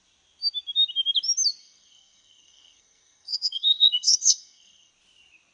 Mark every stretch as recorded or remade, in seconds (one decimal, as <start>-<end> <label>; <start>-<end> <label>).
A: 0.0-1.6 recorded; 1.6-4.9 remade; 4.9-5.5 recorded